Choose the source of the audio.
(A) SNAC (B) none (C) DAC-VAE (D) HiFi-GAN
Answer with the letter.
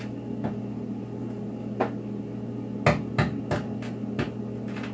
B